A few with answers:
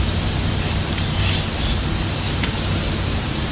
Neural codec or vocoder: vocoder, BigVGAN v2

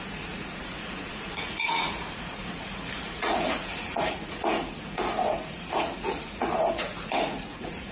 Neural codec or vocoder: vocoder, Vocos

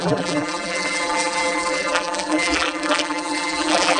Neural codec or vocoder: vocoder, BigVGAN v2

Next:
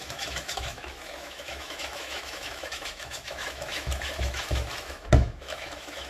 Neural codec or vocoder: autoencoder, DAC-VAE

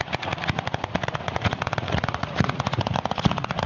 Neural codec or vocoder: vocoder, Vocos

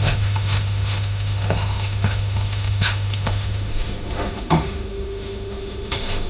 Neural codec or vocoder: autoencoder, DAC-VAE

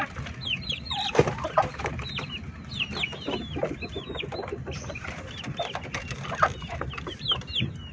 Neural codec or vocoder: none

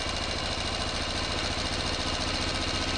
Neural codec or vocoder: none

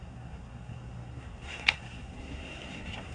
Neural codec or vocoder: codec, SNAC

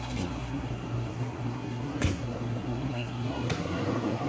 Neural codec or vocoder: codec, SNAC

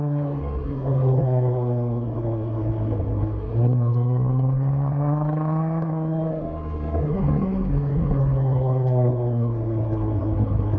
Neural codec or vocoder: codec, SNAC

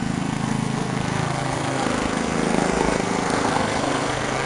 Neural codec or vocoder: codec, SNAC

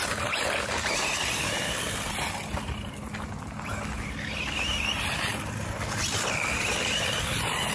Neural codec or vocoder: none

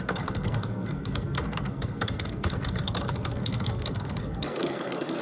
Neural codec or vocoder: codec, SNAC